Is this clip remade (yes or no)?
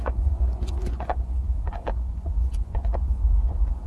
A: yes